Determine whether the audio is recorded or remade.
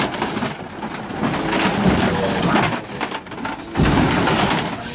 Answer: recorded